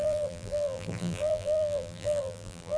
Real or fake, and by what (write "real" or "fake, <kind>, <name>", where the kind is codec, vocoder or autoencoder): fake, vocoder, BigVGAN v2